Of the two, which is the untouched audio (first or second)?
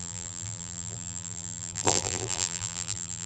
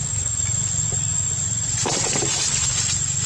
second